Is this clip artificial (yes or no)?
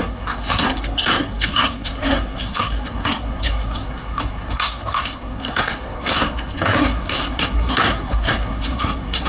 yes